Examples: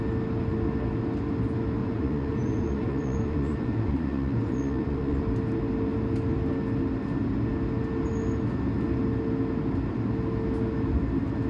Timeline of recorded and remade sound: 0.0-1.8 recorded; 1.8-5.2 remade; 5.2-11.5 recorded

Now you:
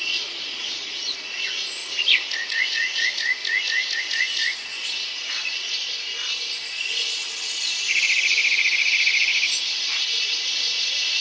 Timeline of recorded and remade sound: 0.0-3.4 remade; 3.4-4.0 recorded; 4.0-5.8 remade; 5.8-6.8 recorded; 6.8-11.2 remade

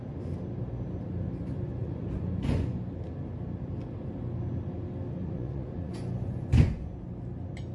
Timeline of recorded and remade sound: 0.0-1.4 recorded; 1.4-2.8 remade; 2.8-5.2 recorded; 5.2-6.9 remade; 6.9-7.7 recorded

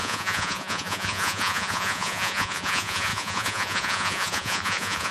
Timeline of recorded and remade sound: 0.0-5.1 remade

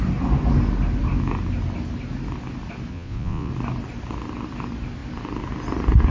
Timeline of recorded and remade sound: 0.0-2.9 recorded; 2.9-3.5 remade; 3.5-6.1 recorded

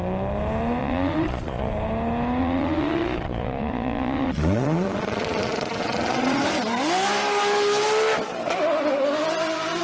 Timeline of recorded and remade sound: 0.0-0.8 recorded; 0.8-1.7 remade; 1.7-2.4 recorded; 2.4-6.4 remade; 6.4-9.8 recorded